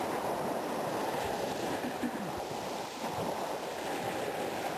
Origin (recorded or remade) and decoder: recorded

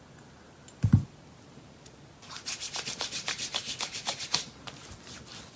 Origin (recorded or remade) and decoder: recorded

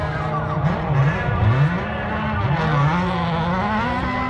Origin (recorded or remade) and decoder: recorded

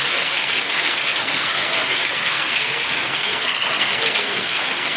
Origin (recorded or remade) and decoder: remade, codec, SNAC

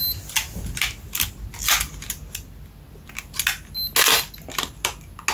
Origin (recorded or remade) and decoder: recorded